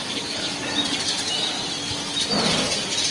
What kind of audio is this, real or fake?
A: real